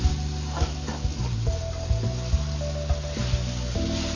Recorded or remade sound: recorded